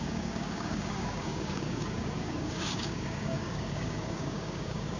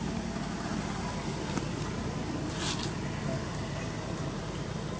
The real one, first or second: second